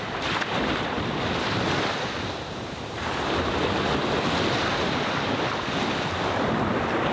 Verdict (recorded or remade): remade